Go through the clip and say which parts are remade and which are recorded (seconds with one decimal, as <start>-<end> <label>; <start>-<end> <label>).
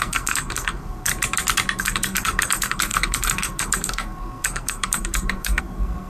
0.0-1.1 remade; 1.1-1.8 recorded; 1.8-6.1 remade